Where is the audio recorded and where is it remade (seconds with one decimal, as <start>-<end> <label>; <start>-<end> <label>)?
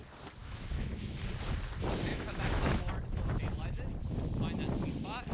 0.0-0.4 recorded; 0.4-1.2 remade; 1.2-2.1 recorded; 2.1-2.9 remade; 2.9-5.3 recorded